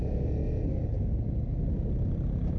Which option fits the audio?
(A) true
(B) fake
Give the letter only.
A